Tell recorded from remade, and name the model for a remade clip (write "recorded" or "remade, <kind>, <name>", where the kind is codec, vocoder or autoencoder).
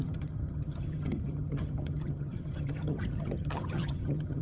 remade, vocoder, HiFi-GAN